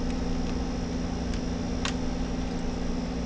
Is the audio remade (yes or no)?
no